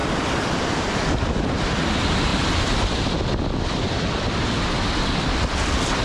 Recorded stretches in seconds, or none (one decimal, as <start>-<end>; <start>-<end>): 0.0-6.0